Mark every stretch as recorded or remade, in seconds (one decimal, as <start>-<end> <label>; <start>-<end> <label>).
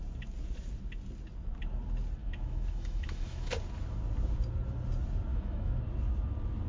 0.0-2.2 recorded; 2.2-3.5 remade; 3.5-5.3 recorded; 5.3-5.8 remade; 5.8-6.7 recorded